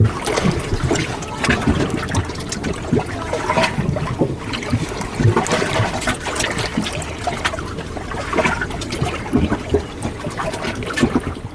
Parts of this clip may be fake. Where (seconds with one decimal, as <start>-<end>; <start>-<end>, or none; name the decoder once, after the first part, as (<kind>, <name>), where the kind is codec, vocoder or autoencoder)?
none